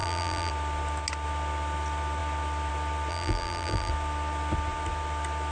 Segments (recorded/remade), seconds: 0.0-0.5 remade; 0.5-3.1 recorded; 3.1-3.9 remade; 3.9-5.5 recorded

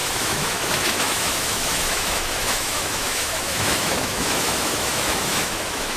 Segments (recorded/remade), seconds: 0.0-6.0 remade

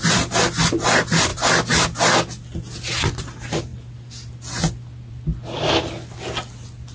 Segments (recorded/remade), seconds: 0.0-6.9 recorded

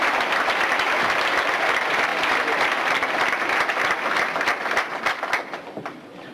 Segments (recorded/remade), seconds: 0.0-6.3 recorded

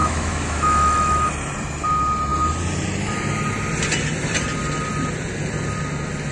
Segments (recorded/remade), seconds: 0.0-1.3 remade; 1.3-6.3 recorded

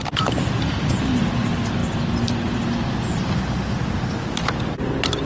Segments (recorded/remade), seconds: 0.0-5.3 recorded